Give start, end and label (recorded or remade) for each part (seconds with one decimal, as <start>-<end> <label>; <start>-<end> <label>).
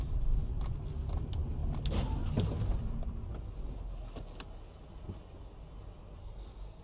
0.0-6.2 recorded; 6.2-6.8 remade